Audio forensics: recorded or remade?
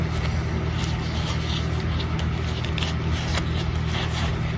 recorded